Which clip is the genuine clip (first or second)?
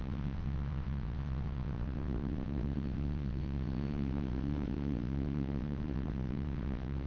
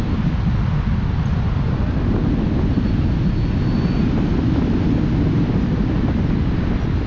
second